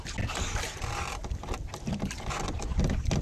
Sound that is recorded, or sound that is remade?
recorded